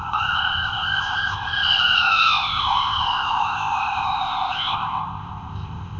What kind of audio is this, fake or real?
fake